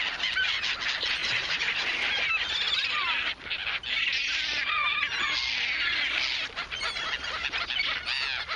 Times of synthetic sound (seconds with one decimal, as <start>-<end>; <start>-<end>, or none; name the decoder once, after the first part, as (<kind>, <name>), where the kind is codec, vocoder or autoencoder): 1.2-2.3 (vocoder, BigVGAN v2)